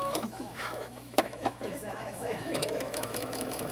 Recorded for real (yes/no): no